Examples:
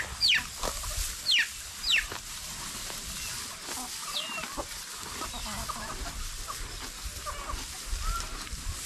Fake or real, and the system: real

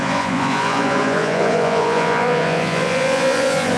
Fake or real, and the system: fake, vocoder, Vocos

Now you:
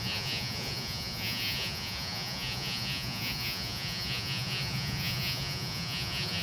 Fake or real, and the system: fake, vocoder, Vocos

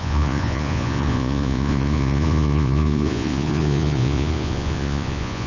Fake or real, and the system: fake, vocoder, Vocos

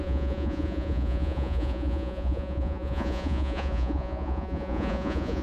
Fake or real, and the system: fake, vocoder, Vocos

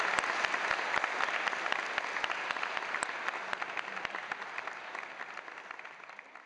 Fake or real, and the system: real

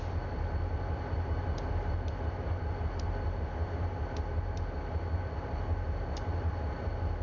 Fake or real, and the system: real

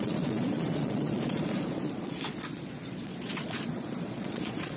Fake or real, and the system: fake, vocoder, Vocos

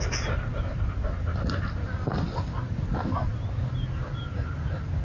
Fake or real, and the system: real